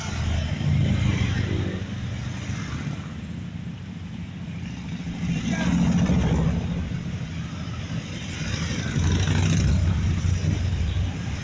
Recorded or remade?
recorded